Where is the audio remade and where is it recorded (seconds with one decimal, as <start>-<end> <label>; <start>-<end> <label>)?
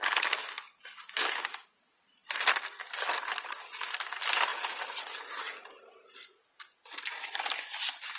0.0-8.2 recorded